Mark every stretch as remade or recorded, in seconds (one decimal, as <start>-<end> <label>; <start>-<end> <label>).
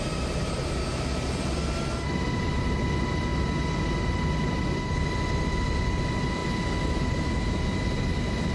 0.0-8.5 recorded